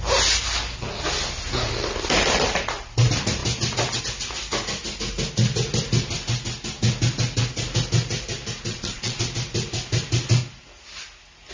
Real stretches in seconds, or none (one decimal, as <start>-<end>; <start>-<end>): 0.0-8.7; 9.2-11.5